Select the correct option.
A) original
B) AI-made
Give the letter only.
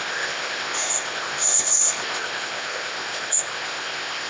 B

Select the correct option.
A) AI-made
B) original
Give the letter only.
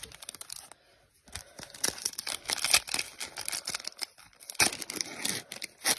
B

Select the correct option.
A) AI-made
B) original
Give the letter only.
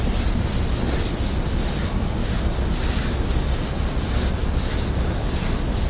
B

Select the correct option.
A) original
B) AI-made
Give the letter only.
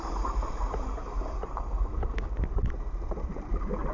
A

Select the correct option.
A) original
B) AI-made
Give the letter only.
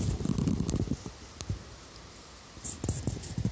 A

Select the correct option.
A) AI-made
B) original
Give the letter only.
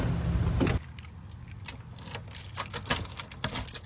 B